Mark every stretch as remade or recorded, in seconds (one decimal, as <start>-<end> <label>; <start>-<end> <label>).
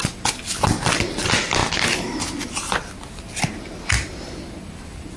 0.0-5.2 recorded